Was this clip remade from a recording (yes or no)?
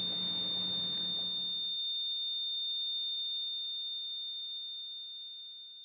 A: no